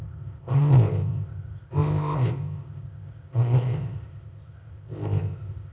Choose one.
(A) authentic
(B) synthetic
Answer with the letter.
B